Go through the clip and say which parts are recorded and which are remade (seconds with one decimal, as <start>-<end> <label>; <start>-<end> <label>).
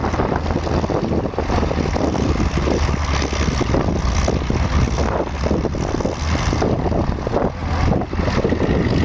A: 0.0-9.0 recorded